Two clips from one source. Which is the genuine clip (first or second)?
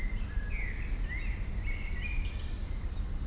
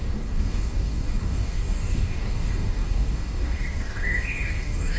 first